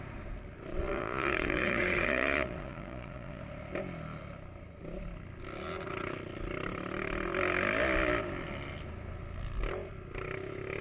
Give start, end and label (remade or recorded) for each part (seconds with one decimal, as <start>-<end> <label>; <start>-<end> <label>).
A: 0.0-0.7 recorded; 0.7-3.4 remade; 3.4-10.8 recorded